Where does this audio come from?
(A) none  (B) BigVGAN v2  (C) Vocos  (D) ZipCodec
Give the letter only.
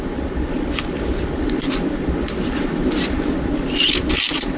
A